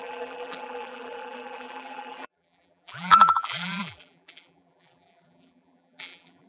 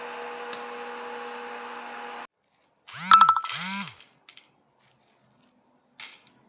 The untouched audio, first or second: second